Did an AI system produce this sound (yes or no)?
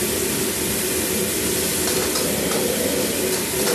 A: no